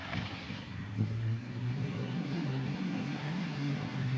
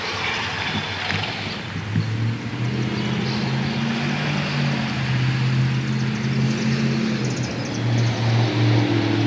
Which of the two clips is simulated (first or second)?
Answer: first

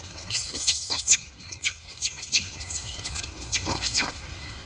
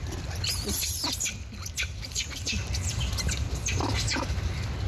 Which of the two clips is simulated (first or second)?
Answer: first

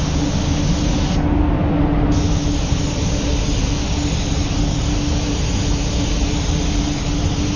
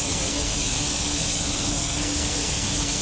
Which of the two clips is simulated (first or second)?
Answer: second